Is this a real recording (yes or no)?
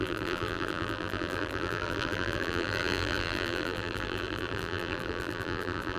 no